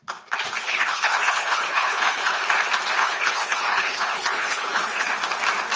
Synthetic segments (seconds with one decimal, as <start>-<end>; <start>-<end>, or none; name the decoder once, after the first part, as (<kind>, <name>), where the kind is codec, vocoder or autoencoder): 0.6-2.4 (codec, HILCodec); 3.0-5.1